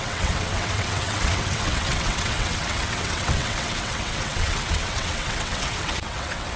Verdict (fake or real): fake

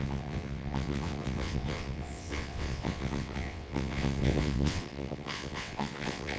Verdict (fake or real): fake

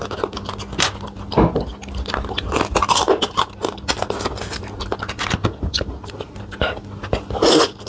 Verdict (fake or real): real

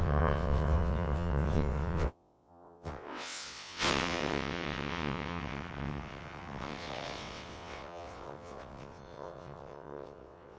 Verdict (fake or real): fake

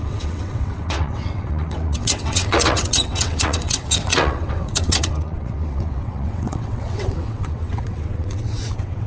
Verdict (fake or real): fake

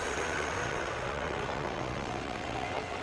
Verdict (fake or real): fake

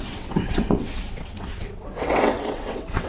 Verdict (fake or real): fake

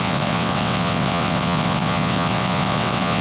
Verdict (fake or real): fake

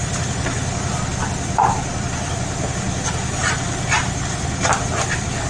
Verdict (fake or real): real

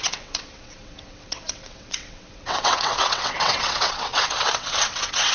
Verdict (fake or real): fake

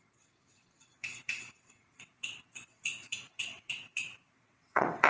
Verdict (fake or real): fake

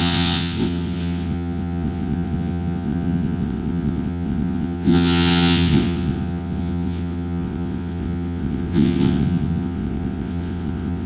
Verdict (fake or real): fake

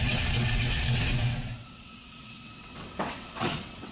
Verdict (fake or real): fake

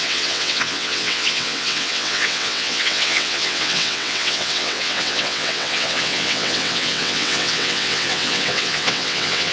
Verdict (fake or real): fake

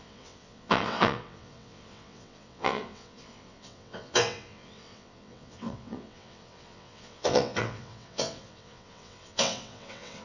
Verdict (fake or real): fake